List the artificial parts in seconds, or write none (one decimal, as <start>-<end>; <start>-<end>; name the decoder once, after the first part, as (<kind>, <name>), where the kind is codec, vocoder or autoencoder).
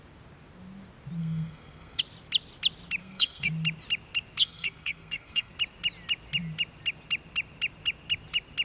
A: 1.2-2.0 (codec, SNAC); 3.0-3.5; 4.4-5.5